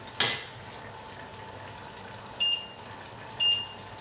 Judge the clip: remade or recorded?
recorded